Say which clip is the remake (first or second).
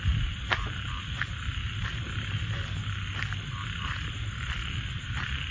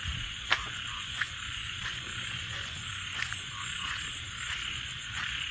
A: second